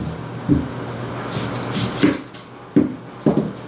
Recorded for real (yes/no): yes